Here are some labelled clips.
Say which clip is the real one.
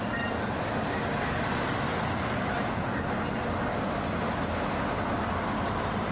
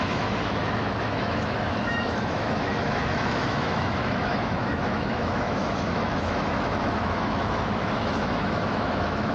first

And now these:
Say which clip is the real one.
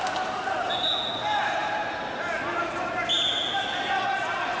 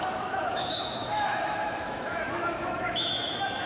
first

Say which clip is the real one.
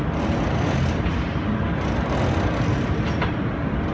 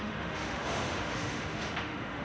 first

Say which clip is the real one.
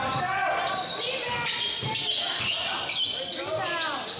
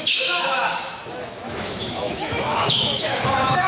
first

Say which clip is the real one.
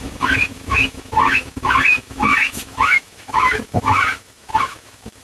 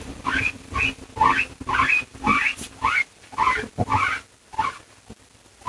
second